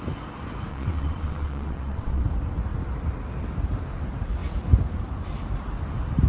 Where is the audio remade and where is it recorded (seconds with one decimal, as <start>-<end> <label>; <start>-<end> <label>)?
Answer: 0.0-0.7 recorded; 0.7-2.2 remade; 2.2-6.3 recorded